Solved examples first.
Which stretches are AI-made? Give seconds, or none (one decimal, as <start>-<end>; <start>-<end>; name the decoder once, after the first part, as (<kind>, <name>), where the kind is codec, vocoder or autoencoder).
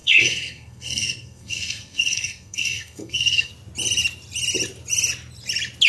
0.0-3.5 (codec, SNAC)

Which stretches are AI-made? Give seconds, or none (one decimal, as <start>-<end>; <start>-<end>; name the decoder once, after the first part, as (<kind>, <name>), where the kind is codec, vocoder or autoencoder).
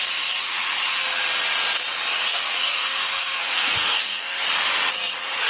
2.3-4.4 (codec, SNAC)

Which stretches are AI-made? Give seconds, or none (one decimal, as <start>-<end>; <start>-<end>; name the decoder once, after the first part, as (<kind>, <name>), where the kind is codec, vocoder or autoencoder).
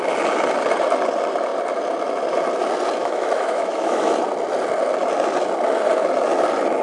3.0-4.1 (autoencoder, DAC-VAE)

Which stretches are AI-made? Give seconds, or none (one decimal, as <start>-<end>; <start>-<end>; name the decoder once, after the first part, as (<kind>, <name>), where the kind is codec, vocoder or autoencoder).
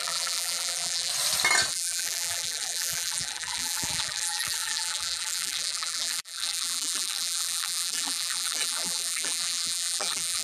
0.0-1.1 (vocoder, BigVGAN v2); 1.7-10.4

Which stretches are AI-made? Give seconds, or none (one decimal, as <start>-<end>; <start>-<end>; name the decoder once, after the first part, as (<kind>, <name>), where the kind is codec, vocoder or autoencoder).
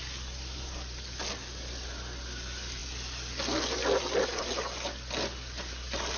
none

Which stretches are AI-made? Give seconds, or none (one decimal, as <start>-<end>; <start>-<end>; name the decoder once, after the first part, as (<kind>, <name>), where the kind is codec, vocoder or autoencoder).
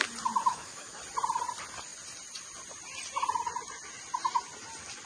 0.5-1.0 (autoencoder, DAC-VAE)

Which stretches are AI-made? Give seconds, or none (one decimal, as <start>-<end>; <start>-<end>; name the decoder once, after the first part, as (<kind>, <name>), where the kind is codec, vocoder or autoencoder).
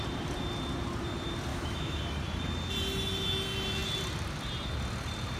1.5-2.0 (autoencoder, DAC-VAE)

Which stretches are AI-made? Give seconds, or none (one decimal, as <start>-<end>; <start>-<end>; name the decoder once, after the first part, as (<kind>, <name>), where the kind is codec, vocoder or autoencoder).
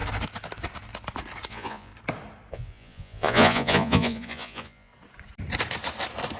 1.5-1.9 (vocoder, Vocos); 2.5-4.9